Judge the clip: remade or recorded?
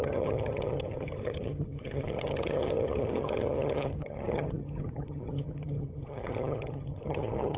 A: remade